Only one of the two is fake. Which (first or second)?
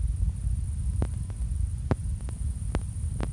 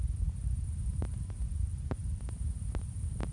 second